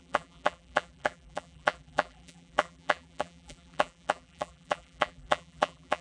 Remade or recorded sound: remade